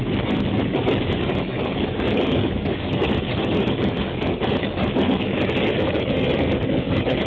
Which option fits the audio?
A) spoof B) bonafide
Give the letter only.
A